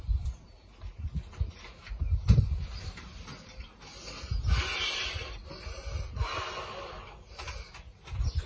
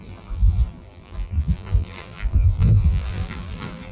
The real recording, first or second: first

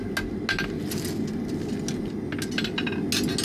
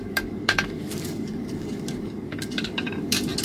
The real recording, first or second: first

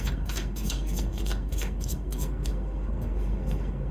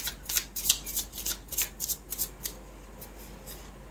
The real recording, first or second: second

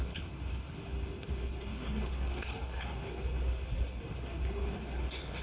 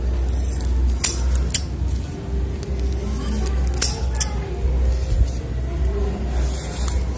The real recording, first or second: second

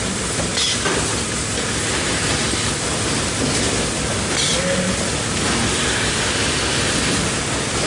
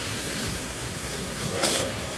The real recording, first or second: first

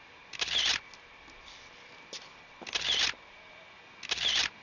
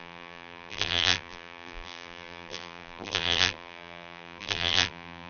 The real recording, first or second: first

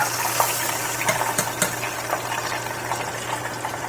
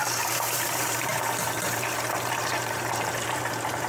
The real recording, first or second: first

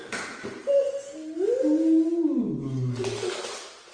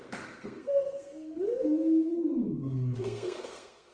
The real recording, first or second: first